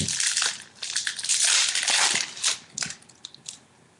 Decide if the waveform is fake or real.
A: real